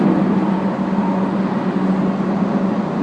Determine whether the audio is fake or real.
real